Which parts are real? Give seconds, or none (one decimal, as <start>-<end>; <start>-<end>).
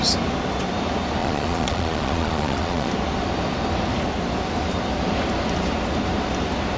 0.0-1.2; 2.9-6.8